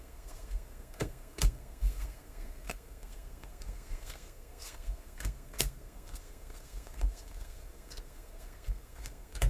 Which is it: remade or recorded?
remade